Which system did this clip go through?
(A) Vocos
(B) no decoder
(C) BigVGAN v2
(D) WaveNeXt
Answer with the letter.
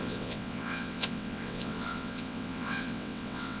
D